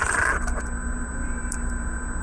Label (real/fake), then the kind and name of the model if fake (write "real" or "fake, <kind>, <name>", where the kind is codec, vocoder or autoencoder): real